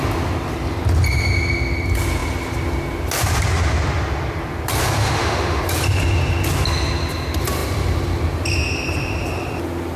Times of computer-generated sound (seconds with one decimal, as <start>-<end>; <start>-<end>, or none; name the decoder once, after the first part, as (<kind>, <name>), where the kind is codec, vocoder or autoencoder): 5.0-5.6 (autoencoder, DAC-VAE)